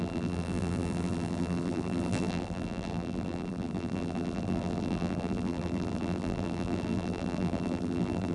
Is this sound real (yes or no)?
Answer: no